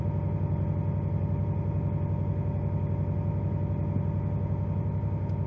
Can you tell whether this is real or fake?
real